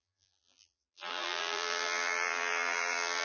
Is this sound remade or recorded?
remade